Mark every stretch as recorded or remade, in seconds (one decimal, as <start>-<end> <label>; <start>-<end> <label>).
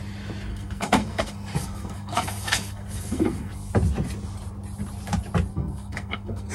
0.0-0.5 recorded; 0.5-3.7 remade; 3.7-5.5 recorded; 5.5-6.5 remade